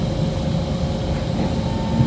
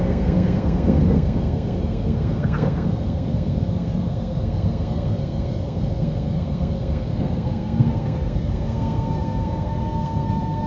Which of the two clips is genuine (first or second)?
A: first